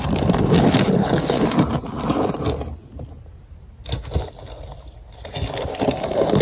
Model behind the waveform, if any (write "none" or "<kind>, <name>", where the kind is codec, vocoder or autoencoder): none